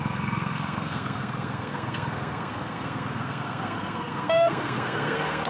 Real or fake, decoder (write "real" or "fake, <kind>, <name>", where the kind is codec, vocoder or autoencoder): fake, codec, SNAC